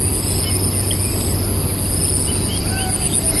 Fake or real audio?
real